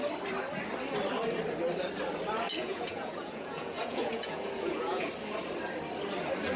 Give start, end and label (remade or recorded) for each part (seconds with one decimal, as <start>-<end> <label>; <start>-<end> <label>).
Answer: 0.0-2.6 recorded; 2.6-5.1 remade; 5.1-6.6 recorded